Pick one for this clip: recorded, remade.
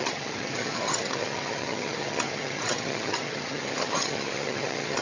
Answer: remade